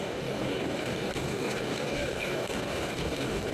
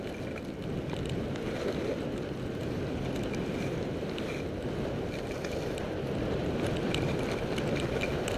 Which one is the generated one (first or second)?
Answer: first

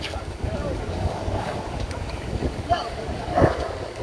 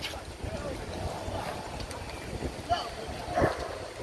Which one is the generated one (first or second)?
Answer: first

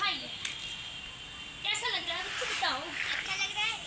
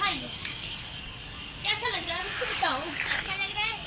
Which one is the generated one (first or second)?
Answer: second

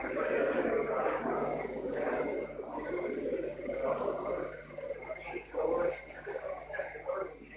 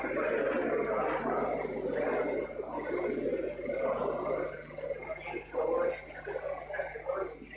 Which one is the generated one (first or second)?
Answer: first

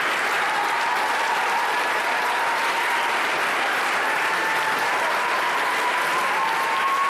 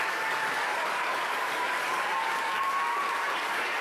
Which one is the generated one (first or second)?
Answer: second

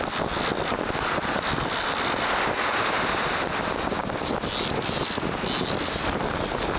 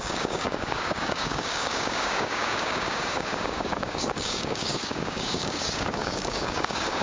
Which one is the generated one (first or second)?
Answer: second